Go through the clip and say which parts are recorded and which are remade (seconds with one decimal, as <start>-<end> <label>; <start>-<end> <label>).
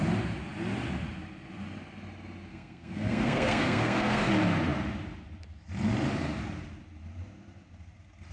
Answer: 0.0-2.5 recorded; 2.5-4.2 remade; 4.2-8.3 recorded